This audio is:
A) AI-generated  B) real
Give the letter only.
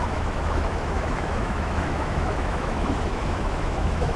A